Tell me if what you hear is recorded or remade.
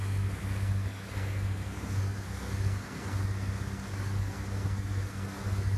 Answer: remade